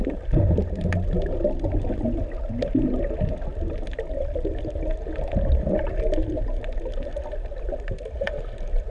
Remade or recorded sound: recorded